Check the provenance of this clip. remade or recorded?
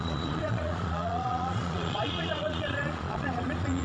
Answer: remade